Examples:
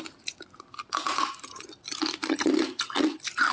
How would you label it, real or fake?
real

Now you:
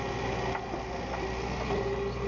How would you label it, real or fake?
real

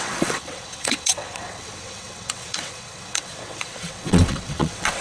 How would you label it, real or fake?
fake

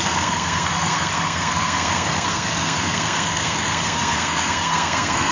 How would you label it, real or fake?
fake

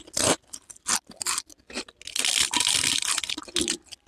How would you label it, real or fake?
real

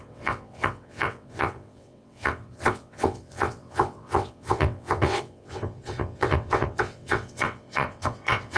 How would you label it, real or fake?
fake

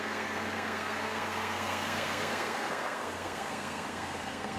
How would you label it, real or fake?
fake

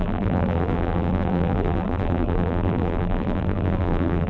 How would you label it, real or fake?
fake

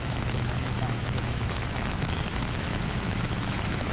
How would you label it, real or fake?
fake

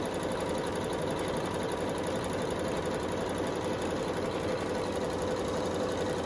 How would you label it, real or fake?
real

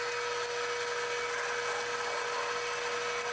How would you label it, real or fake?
real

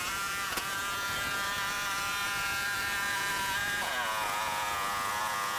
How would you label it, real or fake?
fake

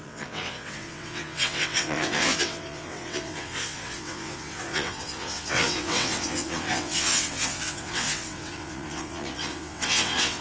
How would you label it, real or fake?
fake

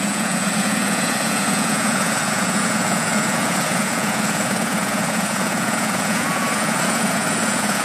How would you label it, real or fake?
fake